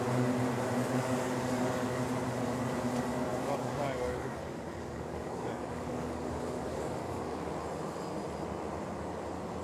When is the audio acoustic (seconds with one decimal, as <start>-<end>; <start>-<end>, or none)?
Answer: 0.0-0.8; 2.0-3.3; 7.5-9.6